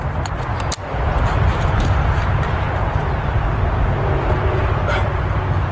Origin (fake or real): real